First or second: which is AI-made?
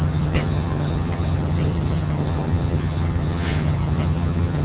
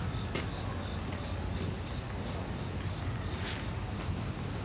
first